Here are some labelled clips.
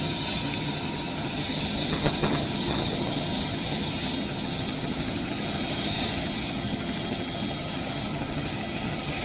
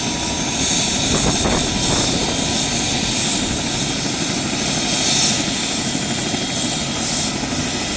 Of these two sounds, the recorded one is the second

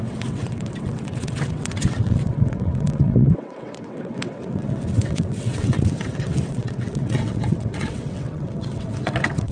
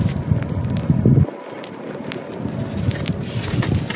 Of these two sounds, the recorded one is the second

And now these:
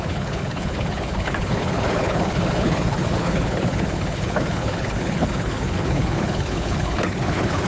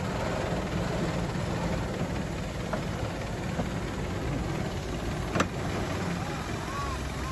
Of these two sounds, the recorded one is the second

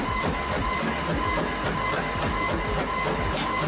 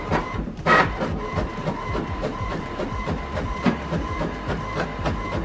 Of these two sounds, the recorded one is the first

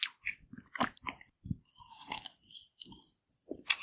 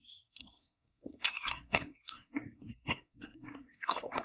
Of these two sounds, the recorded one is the first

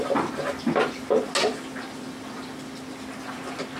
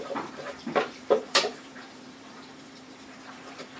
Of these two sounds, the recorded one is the first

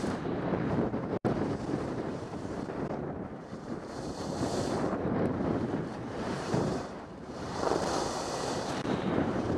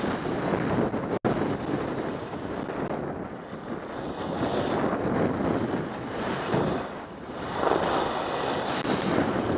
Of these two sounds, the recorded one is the second